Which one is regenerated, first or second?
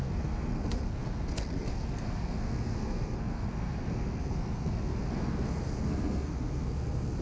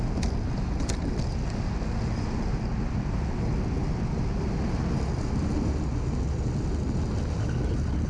first